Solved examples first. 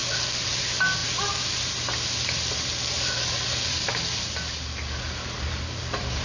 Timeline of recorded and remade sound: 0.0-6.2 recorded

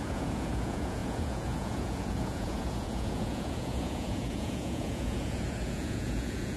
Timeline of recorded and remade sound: 0.0-6.6 remade

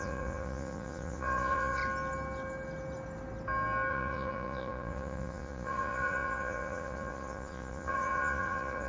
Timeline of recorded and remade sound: 0.0-1.8 remade; 1.8-3.9 recorded; 3.9-8.9 remade

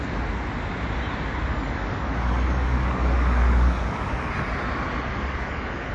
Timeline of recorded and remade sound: 0.0-1.5 recorded; 1.5-4.3 remade; 4.3-5.1 recorded; 5.1-5.9 remade

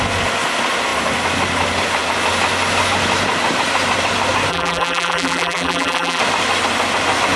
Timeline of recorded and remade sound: 0.0-4.5 recorded; 4.5-6.2 remade; 6.2-7.4 recorded

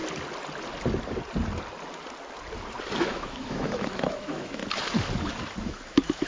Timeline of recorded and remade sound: 0.0-3.0 recorded; 3.0-4.6 remade; 4.6-5.6 recorded; 5.6-6.3 remade

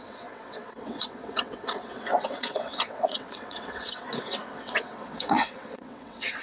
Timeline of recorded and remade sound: 0.0-6.4 remade